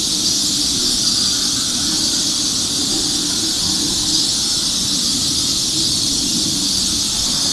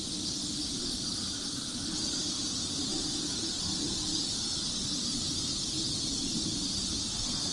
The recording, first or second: first